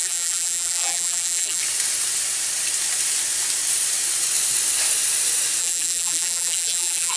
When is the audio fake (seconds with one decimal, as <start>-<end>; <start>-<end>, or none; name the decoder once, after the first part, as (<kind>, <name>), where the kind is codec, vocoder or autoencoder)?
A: 0.0-1.6 (vocoder, BigVGAN v2); 5.6-7.2